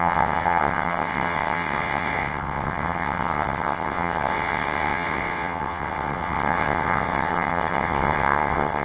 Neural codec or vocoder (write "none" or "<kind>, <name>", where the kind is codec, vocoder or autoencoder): vocoder, WaveNeXt